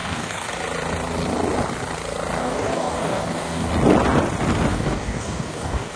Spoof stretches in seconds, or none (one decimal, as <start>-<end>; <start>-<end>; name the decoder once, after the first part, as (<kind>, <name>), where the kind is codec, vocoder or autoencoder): 0.0-0.5 (codec, DAC); 2.4-3.7; 4.7-6.0